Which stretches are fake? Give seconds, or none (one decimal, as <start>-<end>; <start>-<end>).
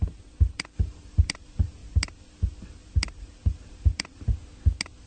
0.0-4.3